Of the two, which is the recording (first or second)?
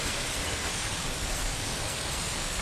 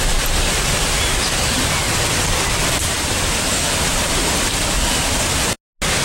second